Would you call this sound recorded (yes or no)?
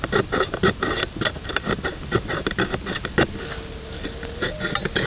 yes